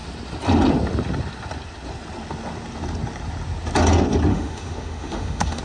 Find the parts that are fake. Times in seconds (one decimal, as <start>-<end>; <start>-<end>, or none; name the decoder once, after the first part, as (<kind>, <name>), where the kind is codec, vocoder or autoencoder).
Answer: 4.3-5.6 (autoencoder, DAC-VAE)